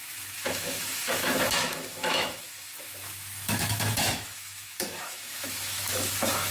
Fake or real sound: fake